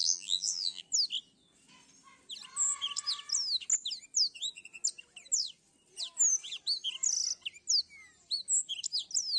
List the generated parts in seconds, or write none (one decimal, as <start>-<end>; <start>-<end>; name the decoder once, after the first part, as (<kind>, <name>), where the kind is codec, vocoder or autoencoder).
0.0-0.8 (vocoder, BigVGAN v2)